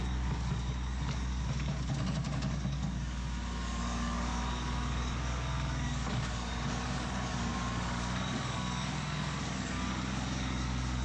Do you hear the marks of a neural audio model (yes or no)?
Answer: yes